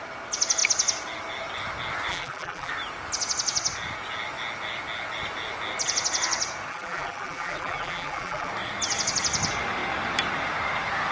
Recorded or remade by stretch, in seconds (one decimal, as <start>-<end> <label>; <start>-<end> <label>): 0.0-2.1 recorded; 2.1-2.7 remade; 2.7-6.7 recorded; 6.7-8.5 remade; 8.5-11.1 recorded